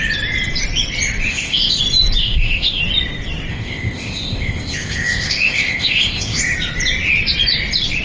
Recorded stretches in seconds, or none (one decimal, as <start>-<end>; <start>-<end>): 0.0-1.3; 1.8-2.2; 2.8-3.5; 6.4-8.0